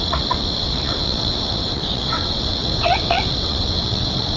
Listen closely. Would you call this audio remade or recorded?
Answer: remade